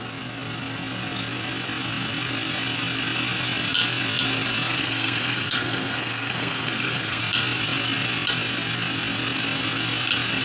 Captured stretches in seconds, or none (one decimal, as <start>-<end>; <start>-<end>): 0.0-4.8; 7.2-10.4